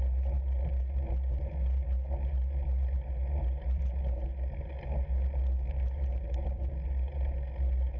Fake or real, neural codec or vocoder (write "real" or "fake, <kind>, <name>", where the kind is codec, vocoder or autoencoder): real